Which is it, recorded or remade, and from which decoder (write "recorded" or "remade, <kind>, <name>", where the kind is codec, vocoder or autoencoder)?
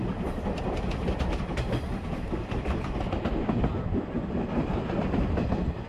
remade, vocoder, BigVGAN v2